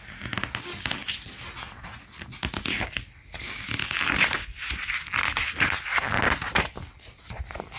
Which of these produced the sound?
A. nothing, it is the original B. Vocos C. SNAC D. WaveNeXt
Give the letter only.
A